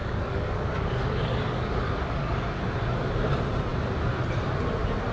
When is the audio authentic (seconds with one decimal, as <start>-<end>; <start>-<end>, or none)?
3.1-5.1